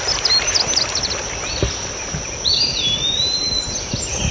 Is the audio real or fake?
real